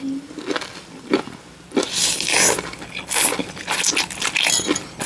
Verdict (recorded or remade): recorded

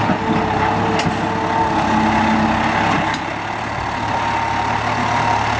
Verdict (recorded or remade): recorded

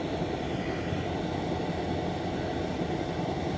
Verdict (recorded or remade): recorded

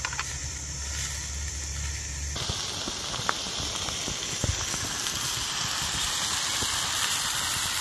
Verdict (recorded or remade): recorded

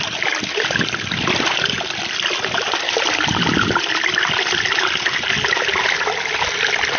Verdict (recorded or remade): recorded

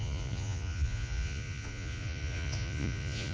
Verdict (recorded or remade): remade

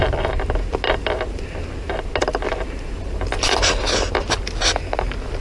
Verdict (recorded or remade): recorded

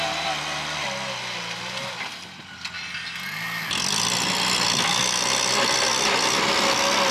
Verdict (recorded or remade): recorded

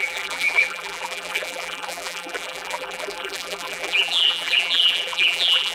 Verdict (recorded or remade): remade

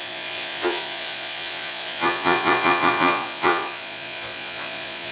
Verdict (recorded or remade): remade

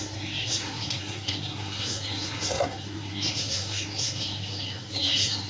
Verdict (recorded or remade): remade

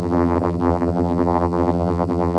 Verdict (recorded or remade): remade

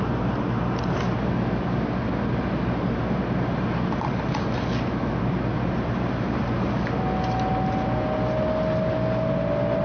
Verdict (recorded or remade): recorded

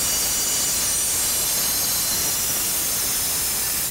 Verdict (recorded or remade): recorded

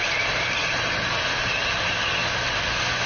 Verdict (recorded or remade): recorded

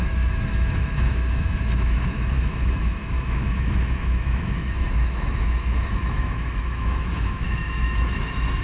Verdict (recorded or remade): remade